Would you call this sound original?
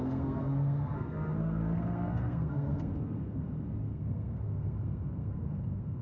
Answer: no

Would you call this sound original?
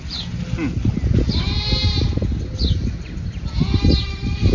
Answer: yes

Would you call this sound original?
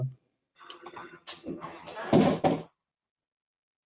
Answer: yes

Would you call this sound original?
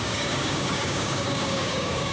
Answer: no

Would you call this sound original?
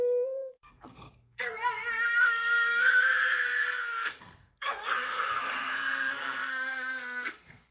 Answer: no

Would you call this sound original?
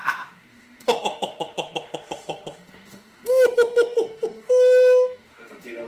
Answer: no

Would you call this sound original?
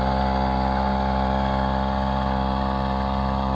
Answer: yes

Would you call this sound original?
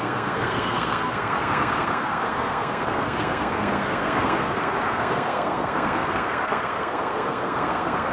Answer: no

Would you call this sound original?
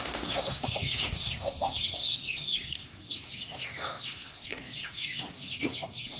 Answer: no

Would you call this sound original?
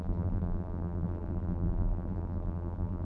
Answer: no